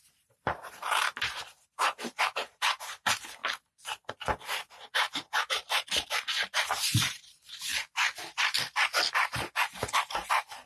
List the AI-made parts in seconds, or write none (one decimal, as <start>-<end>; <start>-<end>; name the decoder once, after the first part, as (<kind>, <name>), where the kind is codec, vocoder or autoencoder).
0.0-3.4 (vocoder, BigVGAN v2); 4.1-7.7; 10.0-10.7